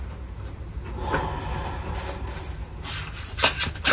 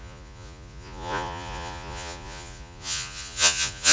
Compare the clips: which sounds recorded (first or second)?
first